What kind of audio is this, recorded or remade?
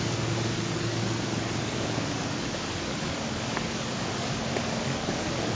remade